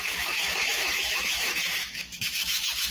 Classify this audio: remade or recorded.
remade